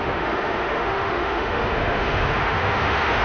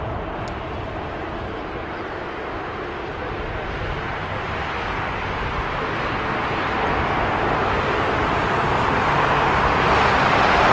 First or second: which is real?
second